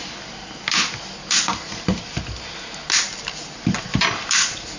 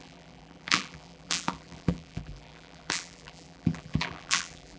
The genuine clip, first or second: first